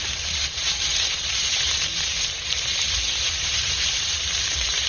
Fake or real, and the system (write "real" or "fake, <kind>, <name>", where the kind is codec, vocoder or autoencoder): fake, vocoder, BigVGAN v2